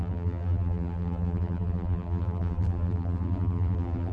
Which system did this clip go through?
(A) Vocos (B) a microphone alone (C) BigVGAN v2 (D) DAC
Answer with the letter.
C